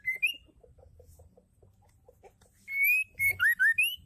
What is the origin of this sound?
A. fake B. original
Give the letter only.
B